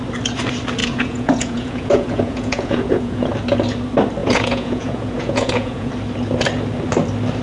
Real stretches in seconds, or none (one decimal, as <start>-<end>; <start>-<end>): 0.0-0.8; 3.3-4.2; 5.9-7.4